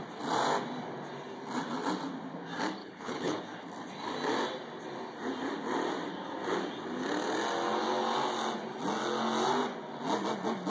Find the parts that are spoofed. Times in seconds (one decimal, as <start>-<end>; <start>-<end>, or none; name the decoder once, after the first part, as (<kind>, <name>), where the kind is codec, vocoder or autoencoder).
2.8-3.4 (codec, HILCodec)